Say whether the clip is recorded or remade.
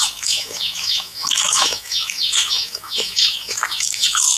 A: remade